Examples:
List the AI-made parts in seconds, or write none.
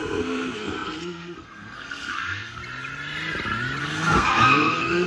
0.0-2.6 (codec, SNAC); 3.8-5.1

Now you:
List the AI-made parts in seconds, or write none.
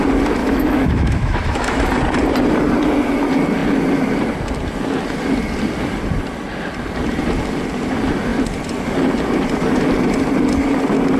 0.4-1.8 (autoencoder, DAC-VAE)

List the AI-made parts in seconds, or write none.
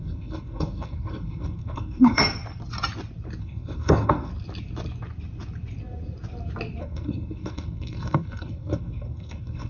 0.0-2.2 (codec, SNAC); 3.4-4.3; 6.8-9.7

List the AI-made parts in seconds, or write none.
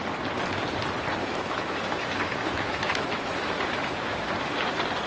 1.2-4.3 (autoencoder, DAC-VAE)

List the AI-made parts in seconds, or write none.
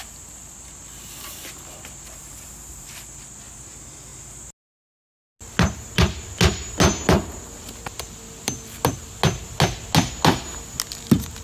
none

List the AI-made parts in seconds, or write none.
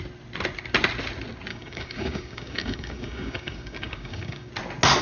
1.5-4.5 (codec, DAC)